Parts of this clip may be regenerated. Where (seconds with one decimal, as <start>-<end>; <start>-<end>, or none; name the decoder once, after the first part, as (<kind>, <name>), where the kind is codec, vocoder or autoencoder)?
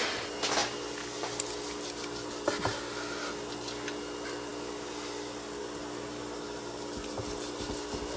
none